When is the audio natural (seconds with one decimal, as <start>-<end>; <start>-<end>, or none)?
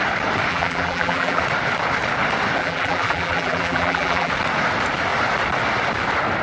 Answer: 0.0-0.5; 1.4-2.6; 4.3-6.4